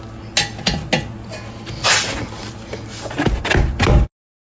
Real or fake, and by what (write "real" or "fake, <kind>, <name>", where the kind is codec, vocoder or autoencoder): real